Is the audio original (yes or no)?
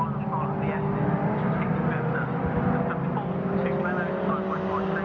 yes